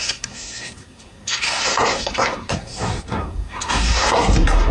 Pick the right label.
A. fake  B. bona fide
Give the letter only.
A